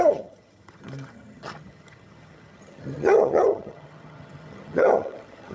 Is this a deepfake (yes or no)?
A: yes